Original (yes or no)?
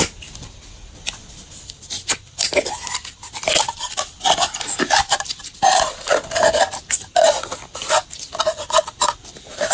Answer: no